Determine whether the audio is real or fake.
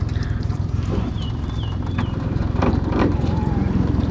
fake